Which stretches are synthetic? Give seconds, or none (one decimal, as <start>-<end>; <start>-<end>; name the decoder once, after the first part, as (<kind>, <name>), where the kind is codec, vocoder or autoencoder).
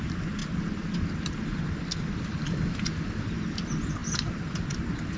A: none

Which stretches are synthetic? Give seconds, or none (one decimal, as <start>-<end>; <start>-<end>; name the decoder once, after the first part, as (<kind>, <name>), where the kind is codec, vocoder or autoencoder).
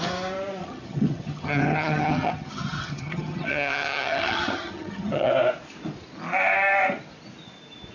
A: 0.6-5.3 (vocoder, HiFi-GAN)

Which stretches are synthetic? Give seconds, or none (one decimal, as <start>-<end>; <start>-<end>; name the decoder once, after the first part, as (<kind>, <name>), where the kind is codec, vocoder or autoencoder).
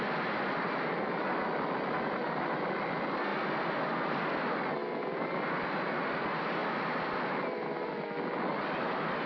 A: none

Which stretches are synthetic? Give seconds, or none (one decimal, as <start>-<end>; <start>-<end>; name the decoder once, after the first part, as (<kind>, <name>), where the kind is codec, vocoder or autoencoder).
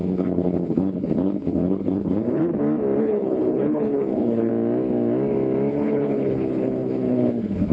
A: 0.0-2.4 (codec, HILCodec); 3.0-4.5; 5.7-7.7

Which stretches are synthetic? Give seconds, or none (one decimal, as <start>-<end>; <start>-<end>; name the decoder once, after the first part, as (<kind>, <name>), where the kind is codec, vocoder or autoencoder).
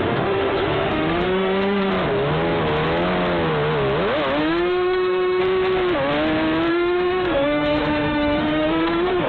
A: 0.0-1.9 (autoencoder, DAC-VAE); 4.4-5.4; 6.7-9.3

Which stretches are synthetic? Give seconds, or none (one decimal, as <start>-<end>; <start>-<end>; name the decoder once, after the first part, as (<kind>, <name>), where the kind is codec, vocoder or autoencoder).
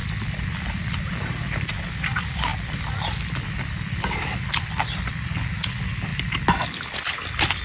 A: 0.0-1.7 (vocoder, BigVGAN v2); 2.5-5.6